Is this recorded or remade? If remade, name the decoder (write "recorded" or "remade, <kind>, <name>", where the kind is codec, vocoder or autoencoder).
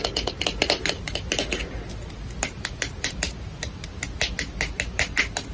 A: recorded